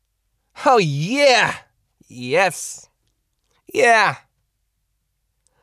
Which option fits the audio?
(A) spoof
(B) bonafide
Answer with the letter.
B